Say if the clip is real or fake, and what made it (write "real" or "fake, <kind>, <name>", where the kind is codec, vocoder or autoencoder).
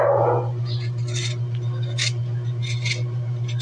real